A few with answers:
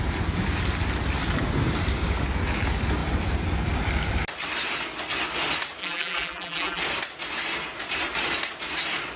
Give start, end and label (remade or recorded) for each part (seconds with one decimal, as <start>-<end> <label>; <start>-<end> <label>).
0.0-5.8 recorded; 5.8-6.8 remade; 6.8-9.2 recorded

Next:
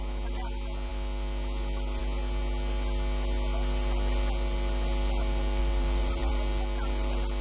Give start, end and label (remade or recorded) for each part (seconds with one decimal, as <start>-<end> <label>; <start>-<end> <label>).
0.0-5.6 recorded; 5.6-6.3 remade; 6.3-7.4 recorded

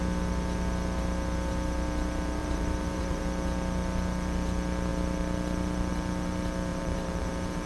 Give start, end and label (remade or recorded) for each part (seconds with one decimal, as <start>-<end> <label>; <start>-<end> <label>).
0.0-2.4 recorded; 2.4-3.2 remade; 3.2-6.7 recorded; 6.7-7.3 remade; 7.3-7.7 recorded